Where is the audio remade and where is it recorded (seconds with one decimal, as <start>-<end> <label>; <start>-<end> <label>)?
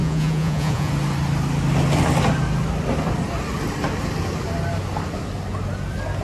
0.0-0.9 remade; 0.9-6.2 recorded